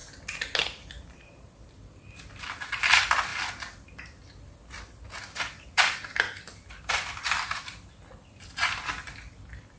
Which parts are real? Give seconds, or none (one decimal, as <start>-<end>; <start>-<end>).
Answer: 0.0-0.6; 3.3-5.4; 8.0-8.7